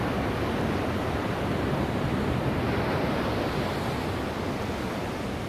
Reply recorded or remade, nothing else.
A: recorded